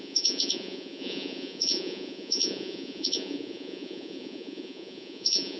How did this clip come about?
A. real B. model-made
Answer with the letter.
B